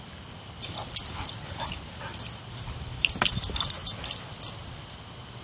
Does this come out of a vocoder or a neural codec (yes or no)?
no